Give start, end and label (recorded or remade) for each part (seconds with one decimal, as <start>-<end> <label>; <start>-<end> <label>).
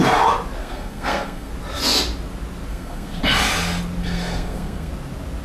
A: 0.0-0.6 recorded; 0.6-1.5 remade; 1.5-2.7 recorded; 2.7-3.2 remade; 3.2-4.0 recorded; 4.0-4.9 remade; 4.9-5.4 recorded